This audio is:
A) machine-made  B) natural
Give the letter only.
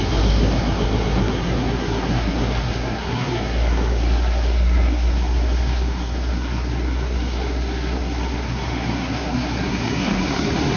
A